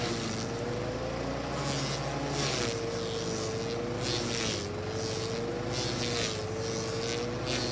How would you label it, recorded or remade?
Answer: recorded